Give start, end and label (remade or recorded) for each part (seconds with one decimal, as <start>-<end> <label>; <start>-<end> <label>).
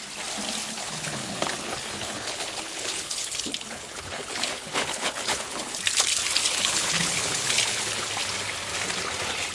0.0-0.6 recorded; 0.6-5.8 remade; 5.8-6.4 recorded; 6.4-8.1 remade; 8.1-9.5 recorded